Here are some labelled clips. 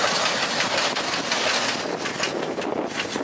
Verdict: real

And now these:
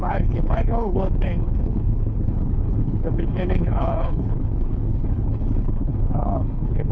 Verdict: fake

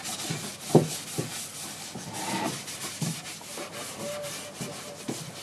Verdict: real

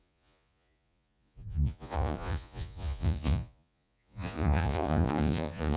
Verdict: fake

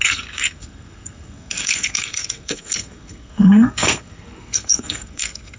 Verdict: fake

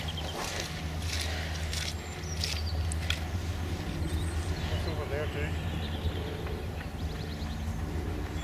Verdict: real